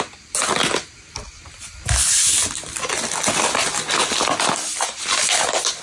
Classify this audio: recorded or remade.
recorded